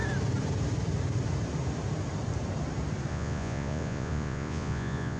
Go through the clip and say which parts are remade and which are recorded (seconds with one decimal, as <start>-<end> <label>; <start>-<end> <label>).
0.0-3.1 recorded; 3.1-5.2 remade